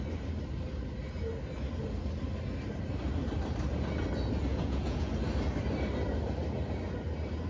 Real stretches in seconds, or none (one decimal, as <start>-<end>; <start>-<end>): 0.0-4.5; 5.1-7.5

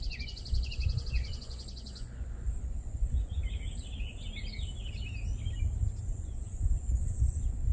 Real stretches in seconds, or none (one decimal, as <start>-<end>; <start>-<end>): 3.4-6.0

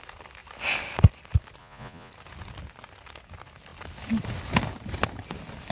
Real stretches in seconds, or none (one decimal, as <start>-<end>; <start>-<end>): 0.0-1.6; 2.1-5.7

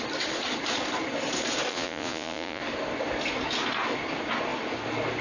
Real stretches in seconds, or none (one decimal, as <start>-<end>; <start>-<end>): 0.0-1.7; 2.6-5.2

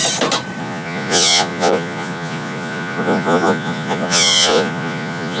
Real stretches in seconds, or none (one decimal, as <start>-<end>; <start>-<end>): 0.0-0.6

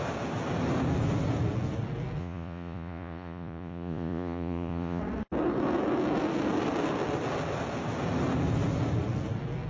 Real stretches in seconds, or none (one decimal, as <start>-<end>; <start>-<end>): 0.0-2.2; 5.0-9.7

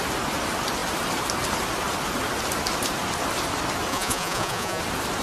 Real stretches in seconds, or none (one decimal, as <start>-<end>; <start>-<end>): 0.0-3.9; 4.8-5.2